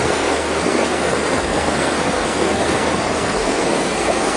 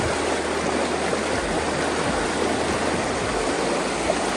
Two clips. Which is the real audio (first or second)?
second